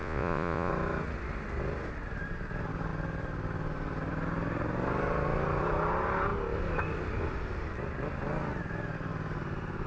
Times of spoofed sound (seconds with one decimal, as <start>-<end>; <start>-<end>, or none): 0.0-0.7